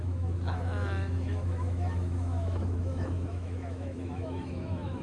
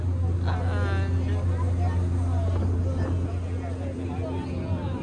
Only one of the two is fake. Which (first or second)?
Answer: first